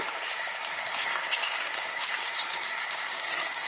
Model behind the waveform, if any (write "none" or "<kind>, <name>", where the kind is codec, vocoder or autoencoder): codec, DAC